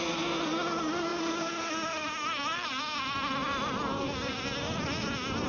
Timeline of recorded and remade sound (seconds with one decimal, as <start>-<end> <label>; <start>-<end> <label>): 0.0-5.5 recorded